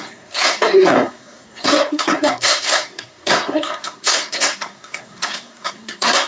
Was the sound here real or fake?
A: fake